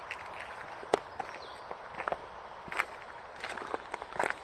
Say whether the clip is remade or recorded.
recorded